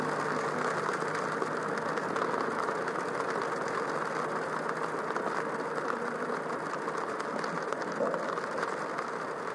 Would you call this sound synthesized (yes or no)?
no